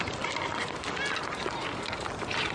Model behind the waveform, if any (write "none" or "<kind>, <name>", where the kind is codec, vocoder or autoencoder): none